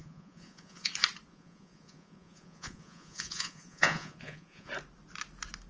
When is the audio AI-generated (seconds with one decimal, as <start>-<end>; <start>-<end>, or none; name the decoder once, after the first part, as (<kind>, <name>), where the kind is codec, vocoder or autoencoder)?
0.0-0.9 (vocoder, Vocos); 1.3-4.7